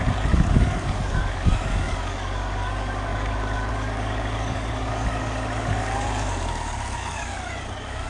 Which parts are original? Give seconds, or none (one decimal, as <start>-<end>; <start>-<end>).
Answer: none